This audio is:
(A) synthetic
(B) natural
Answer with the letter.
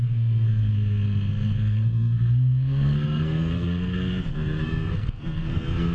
A